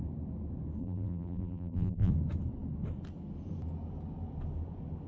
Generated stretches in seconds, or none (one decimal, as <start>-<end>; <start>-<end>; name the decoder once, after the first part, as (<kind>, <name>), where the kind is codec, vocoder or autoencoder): 0.8-2.1 (vocoder, BigVGAN v2)